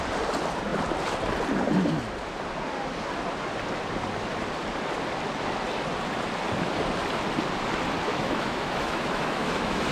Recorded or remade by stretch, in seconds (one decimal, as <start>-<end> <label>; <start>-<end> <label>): 0.0-8.1 recorded; 8.1-9.9 remade